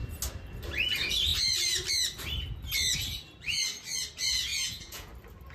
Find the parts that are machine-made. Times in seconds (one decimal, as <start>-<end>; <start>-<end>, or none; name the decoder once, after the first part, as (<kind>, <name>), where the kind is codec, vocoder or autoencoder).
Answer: 4.5-5.1 (vocoder, Vocos)